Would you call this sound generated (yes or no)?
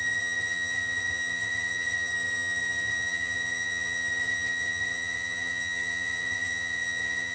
yes